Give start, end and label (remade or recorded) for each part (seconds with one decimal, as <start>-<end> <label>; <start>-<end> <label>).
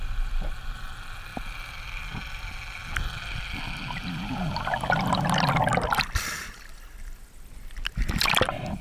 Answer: 0.0-8.8 recorded